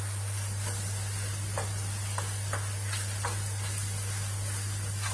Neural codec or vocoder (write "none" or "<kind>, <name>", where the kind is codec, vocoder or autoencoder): none